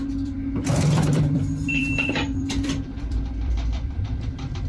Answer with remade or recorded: remade